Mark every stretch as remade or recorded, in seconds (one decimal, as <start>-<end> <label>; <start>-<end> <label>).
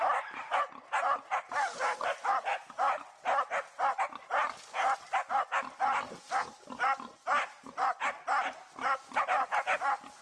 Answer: 0.0-10.2 recorded